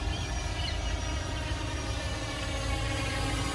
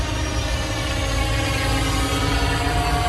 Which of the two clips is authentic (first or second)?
second